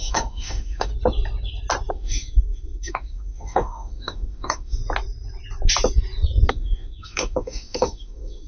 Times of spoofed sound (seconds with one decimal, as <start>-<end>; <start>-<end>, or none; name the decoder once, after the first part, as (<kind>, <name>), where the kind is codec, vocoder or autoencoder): 0.0-0.9 (autoencoder, DAC-VAE); 1.9-4.8; 6.5-8.5